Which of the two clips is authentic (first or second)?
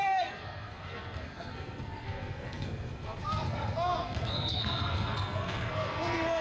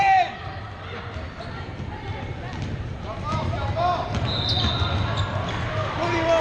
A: second